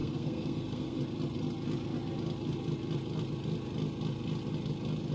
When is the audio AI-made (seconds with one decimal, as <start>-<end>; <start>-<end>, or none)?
0.0-1.0